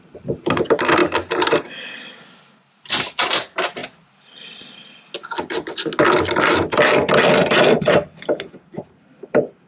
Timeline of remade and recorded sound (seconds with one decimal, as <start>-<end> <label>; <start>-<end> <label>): 0.0-9.7 recorded